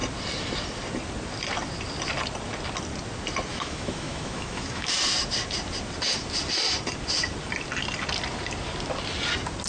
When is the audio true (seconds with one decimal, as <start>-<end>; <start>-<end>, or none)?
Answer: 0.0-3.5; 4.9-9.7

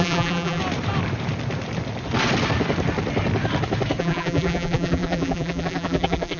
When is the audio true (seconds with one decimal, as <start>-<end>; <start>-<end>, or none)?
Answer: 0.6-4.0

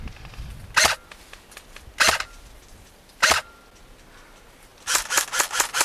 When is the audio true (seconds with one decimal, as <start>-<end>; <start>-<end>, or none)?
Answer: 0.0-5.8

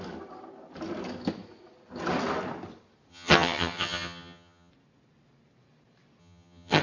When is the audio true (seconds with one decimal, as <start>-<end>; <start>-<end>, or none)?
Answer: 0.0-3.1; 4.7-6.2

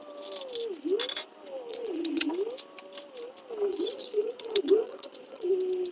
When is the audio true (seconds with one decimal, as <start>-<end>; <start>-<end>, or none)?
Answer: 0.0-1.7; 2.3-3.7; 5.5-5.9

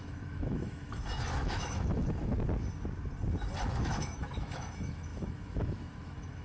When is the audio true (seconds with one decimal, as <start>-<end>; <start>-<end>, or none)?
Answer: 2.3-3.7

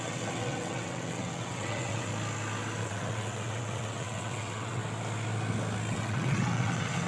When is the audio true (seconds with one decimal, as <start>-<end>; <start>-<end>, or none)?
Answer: 2.1-2.8; 4.8-5.9